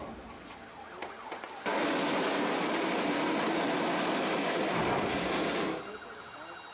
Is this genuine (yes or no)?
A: yes